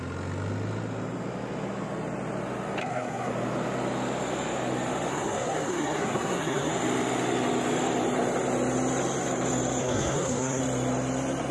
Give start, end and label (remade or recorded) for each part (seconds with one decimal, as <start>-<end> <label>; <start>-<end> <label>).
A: 0.0-2.8 recorded; 2.8-3.3 remade; 3.3-5.1 recorded; 5.1-6.7 remade; 6.7-9.8 recorded; 9.8-10.6 remade; 10.6-11.5 recorded